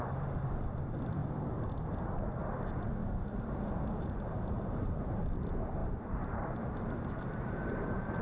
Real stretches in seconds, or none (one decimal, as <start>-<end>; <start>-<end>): 1.2-2.4; 3.0-3.7